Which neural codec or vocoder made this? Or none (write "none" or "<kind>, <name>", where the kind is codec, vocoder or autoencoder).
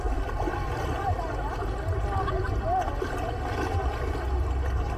none